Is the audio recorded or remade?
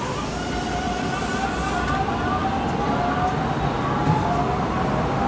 recorded